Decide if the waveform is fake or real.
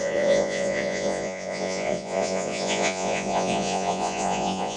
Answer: fake